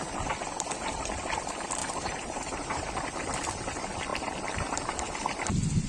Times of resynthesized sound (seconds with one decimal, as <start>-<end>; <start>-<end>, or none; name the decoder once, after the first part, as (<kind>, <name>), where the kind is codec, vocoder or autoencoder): 1.8-2.9 (vocoder, BigVGAN v2)